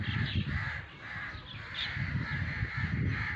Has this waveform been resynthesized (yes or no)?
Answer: no